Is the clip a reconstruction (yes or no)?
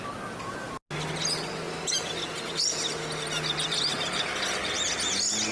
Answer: no